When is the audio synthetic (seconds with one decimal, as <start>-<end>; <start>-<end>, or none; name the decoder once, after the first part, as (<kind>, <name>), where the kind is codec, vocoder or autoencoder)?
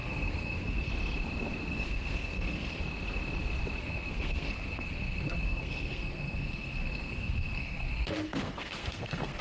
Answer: 0.0-0.9 (codec, SNAC); 1.7-2.8; 3.8-9.4